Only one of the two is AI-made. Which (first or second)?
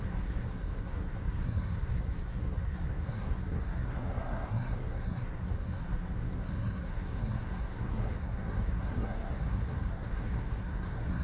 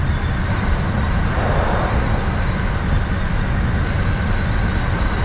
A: first